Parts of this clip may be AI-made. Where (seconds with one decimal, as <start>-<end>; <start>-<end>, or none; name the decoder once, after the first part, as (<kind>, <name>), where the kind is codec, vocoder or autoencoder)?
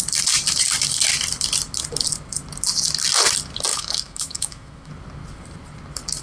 3.7-4.9 (autoencoder, DAC-VAE)